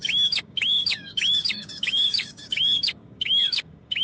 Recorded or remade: remade